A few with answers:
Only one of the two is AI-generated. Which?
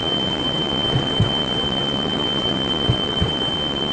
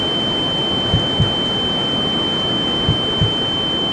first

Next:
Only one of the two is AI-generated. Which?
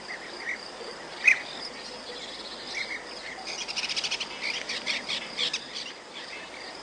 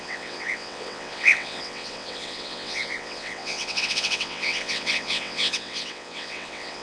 second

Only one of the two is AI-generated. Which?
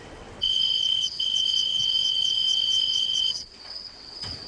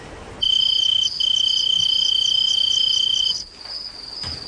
first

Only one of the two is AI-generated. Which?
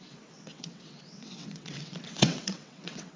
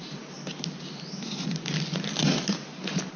first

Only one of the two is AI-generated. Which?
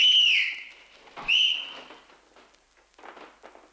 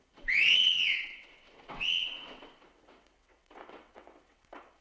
second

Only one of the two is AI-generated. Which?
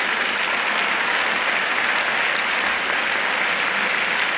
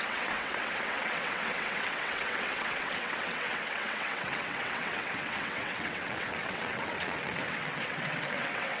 second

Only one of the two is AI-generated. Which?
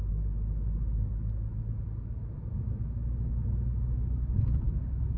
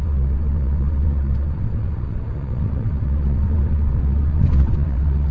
second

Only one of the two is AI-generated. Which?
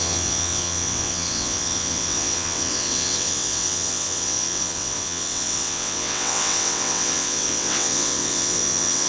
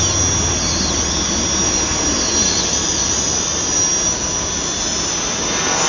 first